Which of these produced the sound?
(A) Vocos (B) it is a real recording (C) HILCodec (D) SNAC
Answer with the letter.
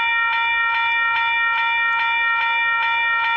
B